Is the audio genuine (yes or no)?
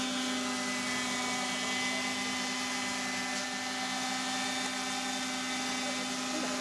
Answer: yes